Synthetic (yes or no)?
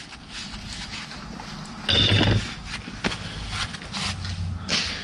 no